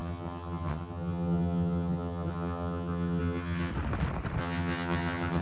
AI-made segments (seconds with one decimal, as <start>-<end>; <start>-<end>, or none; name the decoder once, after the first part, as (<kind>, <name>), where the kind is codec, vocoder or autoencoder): 0.0-3.7 (vocoder, HiFi-GAN); 4.4-5.4